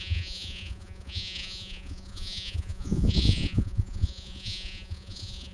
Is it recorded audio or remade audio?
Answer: remade